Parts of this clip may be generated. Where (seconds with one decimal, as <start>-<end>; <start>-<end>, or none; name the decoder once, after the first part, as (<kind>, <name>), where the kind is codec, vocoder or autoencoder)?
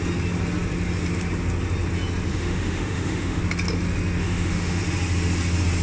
2.3-3.4 (autoencoder, DAC-VAE); 4.2-4.8